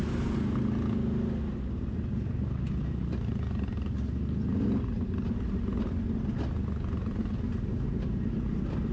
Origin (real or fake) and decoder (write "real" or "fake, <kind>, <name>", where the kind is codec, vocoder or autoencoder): real